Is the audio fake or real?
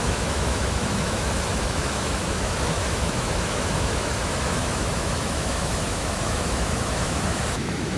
fake